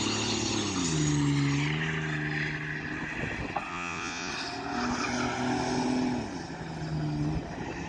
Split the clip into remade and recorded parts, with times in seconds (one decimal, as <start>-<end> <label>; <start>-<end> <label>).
0.0-3.7 recorded; 3.7-4.3 remade; 4.3-7.9 recorded